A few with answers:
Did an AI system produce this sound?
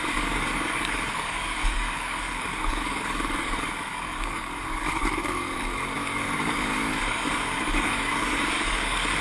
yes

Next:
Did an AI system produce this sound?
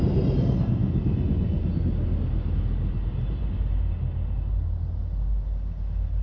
no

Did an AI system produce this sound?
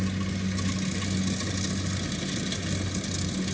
no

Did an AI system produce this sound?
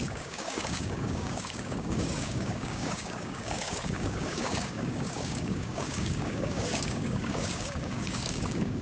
yes